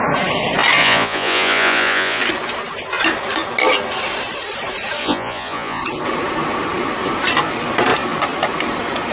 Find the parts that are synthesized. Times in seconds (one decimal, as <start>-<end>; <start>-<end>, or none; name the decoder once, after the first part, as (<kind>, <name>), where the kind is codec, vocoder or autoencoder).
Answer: 0.8-2.2 (vocoder, Vocos); 5.0-5.8